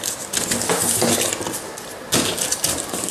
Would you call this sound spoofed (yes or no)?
no